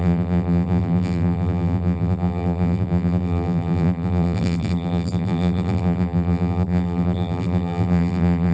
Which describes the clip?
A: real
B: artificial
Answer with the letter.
B